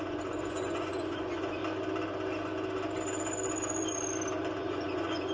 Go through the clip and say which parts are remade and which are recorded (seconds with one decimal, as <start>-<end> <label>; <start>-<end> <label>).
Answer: 0.0-1.6 remade; 1.6-4.6 recorded; 4.6-5.3 remade